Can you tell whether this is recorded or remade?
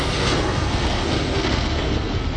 remade